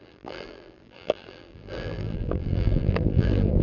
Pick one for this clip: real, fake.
fake